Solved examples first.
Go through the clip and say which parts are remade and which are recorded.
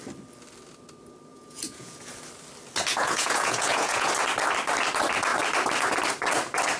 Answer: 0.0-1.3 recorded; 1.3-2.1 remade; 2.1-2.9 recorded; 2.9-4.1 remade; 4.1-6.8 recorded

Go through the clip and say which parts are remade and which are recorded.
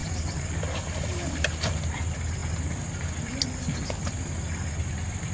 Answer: 0.0-2.0 remade; 2.0-5.3 recorded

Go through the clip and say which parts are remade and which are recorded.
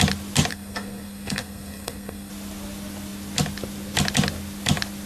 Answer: 0.0-0.5 recorded; 0.5-2.3 remade; 2.3-5.1 recorded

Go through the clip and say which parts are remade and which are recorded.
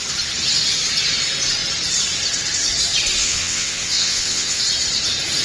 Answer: 0.0-3.2 recorded; 3.2-4.6 remade; 4.6-5.4 recorded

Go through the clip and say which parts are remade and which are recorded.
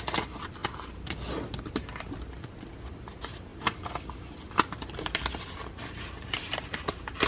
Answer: 0.0-7.3 recorded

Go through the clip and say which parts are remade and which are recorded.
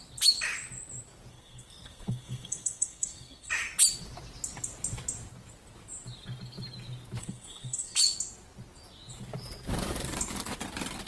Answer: 0.0-1.3 recorded; 1.3-3.5 remade; 3.5-7.2 recorded; 7.2-8.0 remade; 8.0-11.1 recorded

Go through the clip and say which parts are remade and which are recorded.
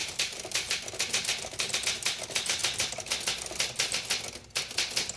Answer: 0.0-0.8 remade; 0.8-5.2 recorded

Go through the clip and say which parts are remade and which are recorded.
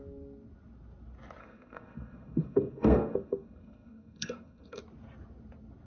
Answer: 0.0-1.4 recorded; 1.4-4.8 remade; 4.8-5.9 recorded